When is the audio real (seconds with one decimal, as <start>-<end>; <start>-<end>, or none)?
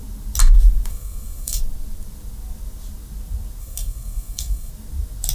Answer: 0.0-0.9; 1.6-3.6; 4.7-5.3